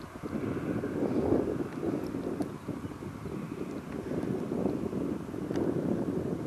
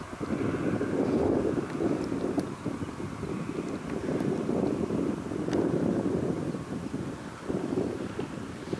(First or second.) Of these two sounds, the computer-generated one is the second